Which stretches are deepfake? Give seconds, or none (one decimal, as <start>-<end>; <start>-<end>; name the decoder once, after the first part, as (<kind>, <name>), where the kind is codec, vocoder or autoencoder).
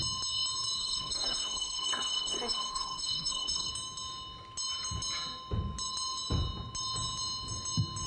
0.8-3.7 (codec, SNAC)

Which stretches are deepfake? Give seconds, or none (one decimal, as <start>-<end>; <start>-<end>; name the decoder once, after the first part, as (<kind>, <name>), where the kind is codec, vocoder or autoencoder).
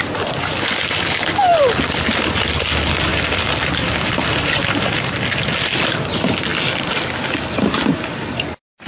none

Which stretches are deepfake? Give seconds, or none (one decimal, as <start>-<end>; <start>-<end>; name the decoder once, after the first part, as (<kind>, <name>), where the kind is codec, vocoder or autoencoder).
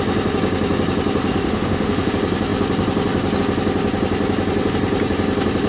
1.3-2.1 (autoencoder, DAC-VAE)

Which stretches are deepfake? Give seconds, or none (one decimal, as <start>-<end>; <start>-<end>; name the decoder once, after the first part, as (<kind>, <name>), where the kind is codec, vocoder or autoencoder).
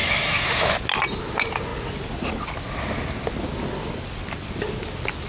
0.0-0.7 (autoencoder, DAC-VAE)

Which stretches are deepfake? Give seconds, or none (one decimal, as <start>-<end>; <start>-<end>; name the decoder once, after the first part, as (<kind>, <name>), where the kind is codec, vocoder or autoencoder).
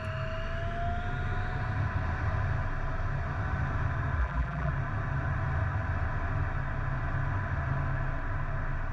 4.2-4.7 (vocoder, BigVGAN v2)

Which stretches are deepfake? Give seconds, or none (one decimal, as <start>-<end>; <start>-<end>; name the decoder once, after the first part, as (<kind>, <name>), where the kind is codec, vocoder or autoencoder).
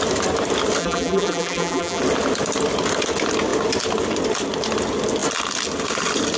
0.8-2.0 (vocoder, BigVGAN v2)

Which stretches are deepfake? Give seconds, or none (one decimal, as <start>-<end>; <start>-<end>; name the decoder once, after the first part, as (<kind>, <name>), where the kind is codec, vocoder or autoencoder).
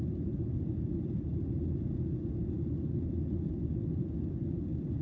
0.0-1.3 (vocoder, BigVGAN v2); 3.6-5.0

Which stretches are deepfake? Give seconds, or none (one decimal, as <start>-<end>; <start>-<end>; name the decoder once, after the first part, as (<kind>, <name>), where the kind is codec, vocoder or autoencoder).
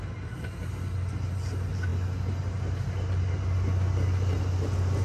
none